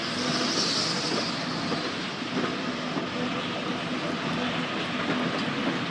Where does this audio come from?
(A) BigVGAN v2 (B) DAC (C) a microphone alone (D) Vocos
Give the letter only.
C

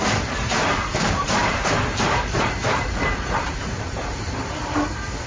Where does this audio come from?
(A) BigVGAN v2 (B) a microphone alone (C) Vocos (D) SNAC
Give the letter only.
A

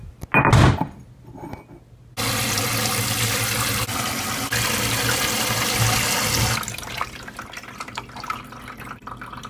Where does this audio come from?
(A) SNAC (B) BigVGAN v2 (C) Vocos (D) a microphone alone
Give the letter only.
D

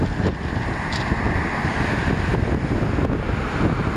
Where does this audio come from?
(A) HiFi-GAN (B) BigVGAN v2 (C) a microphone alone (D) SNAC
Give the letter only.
C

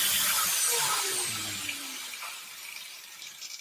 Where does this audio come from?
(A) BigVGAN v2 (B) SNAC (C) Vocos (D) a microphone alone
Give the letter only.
A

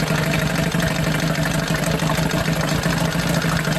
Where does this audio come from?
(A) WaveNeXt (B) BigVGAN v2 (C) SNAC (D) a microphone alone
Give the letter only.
D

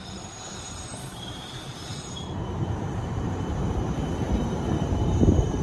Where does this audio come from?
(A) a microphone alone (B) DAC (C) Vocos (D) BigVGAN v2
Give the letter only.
D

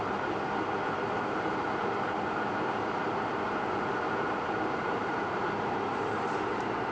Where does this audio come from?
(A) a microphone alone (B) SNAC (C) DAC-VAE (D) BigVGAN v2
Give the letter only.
D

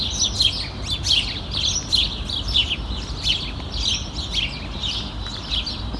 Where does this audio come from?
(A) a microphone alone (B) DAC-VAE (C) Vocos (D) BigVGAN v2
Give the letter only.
A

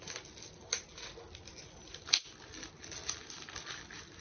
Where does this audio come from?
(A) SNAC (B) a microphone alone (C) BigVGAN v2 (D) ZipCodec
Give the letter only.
B